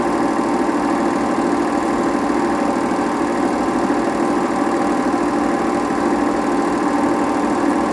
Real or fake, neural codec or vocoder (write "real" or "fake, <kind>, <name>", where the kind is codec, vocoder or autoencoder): real